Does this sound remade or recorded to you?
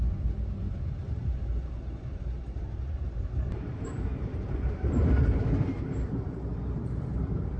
remade